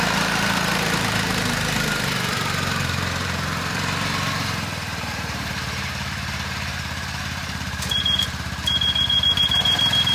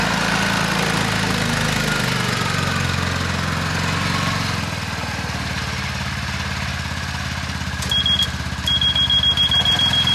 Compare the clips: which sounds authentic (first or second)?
second